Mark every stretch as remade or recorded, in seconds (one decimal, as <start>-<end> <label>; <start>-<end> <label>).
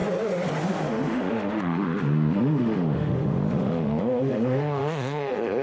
0.0-0.7 recorded; 0.7-5.6 remade